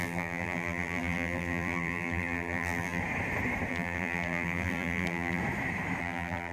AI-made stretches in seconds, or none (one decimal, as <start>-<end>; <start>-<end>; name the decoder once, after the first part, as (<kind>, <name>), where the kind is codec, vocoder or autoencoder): 0.0-3.0 (vocoder, BigVGAN v2); 3.7-5.4; 6.0-6.5